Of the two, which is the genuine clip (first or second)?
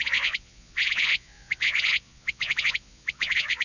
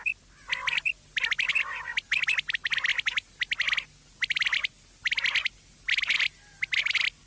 second